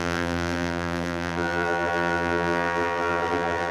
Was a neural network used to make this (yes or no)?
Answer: yes